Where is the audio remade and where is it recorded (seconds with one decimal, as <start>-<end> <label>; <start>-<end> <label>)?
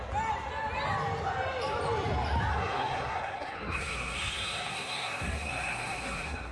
0.0-2.5 recorded; 2.5-6.5 remade